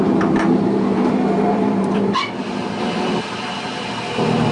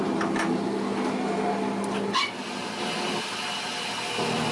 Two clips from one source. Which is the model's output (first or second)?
first